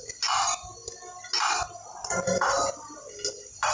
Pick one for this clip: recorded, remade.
recorded